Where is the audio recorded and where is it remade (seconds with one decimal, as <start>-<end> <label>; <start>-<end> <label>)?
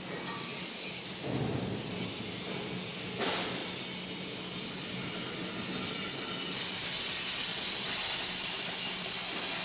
0.0-0.5 recorded; 0.5-1.2 remade; 1.2-7.5 recorded; 7.5-9.1 remade; 9.1-9.6 recorded